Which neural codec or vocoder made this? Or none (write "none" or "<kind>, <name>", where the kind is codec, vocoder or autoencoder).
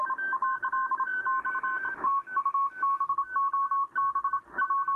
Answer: none